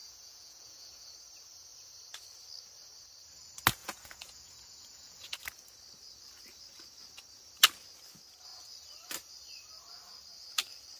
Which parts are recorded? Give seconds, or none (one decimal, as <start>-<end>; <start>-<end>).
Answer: 1.1-3.8; 5.4-11.0